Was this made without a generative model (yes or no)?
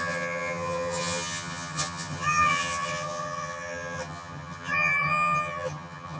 no